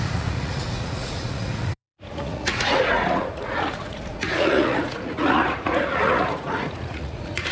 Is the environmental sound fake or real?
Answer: fake